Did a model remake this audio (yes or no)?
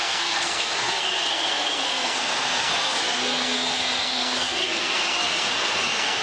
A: yes